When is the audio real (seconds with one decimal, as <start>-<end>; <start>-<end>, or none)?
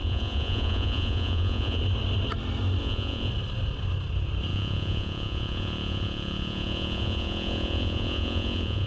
1.8-2.8; 3.3-4.5